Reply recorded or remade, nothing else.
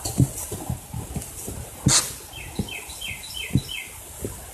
recorded